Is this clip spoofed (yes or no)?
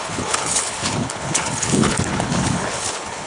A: yes